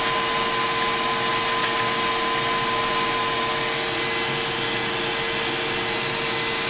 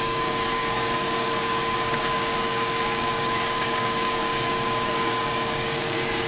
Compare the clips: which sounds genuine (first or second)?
first